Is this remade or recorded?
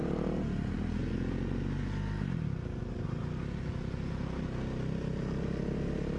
recorded